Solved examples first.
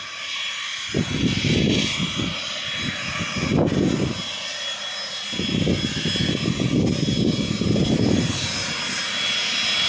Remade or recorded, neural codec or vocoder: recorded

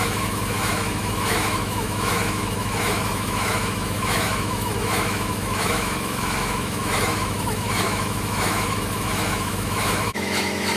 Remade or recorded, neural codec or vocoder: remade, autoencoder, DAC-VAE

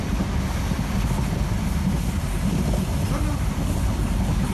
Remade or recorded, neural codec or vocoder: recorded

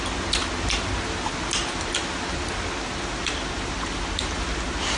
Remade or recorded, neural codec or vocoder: recorded